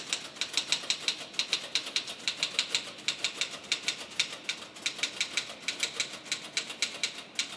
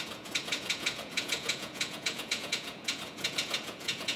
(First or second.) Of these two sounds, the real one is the first